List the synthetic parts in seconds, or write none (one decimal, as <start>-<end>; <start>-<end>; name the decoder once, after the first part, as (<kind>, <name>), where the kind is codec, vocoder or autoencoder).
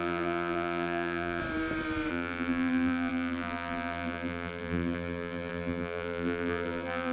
0.0-1.4 (vocoder, BigVGAN v2); 2.1-7.1